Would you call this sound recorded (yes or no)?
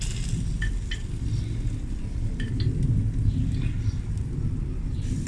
yes